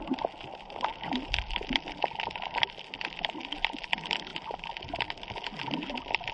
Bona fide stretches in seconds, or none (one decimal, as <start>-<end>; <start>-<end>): 0.0-6.3